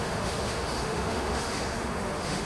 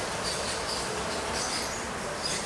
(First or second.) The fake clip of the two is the first